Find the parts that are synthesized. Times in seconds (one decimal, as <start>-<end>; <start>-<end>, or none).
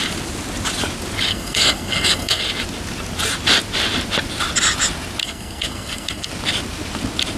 1.3-2.4; 5.2-6.3